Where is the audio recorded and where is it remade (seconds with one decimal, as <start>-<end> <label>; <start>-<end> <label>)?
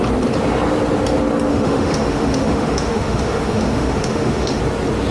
0.0-1.5 recorded; 1.5-4.6 remade; 4.6-5.1 recorded